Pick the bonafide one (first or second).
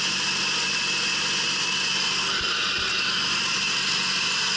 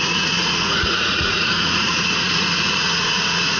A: first